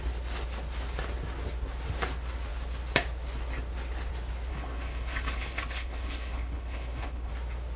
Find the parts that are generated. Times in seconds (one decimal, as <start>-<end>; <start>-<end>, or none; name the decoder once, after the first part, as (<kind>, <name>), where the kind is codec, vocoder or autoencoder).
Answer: 4.5-7.3 (codec, HILCodec)